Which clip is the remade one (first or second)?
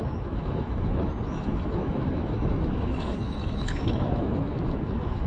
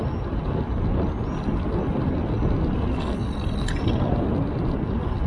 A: first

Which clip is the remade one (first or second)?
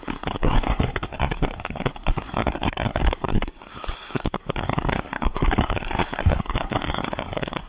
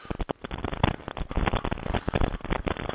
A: first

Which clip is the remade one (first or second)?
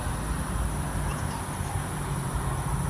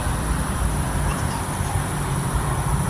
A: second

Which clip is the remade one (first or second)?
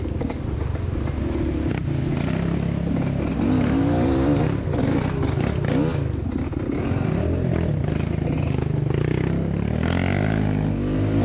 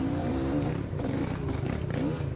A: second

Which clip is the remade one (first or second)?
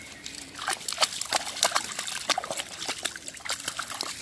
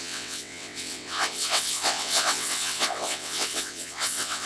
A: second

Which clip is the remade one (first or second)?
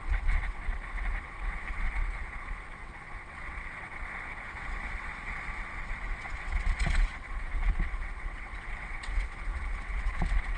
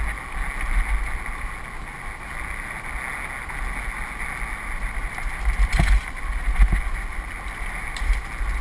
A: first